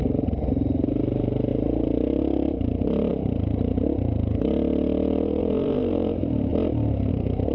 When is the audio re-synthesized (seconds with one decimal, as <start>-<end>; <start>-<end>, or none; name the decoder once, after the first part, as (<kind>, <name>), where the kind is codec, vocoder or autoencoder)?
0.0-6.5 (vocoder, BigVGAN v2); 7.1-7.5